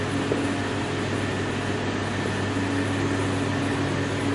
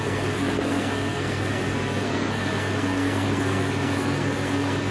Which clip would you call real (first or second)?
first